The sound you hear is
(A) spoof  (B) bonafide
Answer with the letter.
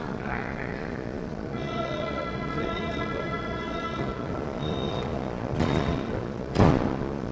A